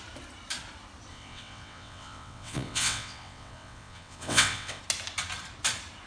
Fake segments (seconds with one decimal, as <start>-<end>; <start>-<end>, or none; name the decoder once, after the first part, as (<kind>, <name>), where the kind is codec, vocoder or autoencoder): 1.1-4.8 (vocoder, WaveNeXt)